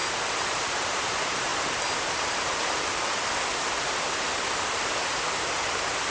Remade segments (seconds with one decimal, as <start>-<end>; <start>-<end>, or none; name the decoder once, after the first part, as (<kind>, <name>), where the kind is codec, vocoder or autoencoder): none